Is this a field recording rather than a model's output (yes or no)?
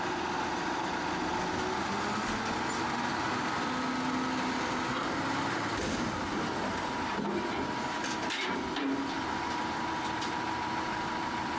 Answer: yes